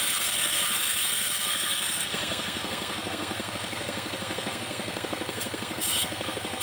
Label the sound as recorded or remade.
remade